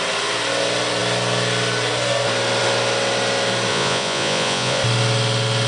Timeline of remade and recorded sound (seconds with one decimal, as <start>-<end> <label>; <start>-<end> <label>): 0.0-3.7 recorded; 3.7-4.8 remade; 4.8-5.7 recorded